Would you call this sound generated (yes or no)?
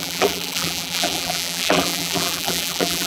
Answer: yes